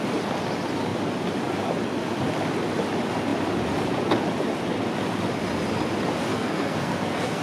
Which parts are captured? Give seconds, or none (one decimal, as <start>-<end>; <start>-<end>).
0.0-6.3